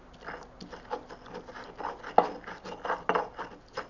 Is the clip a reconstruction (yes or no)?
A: no